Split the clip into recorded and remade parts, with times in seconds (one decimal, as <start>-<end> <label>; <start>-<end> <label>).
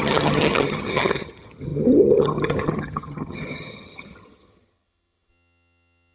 0.0-6.1 remade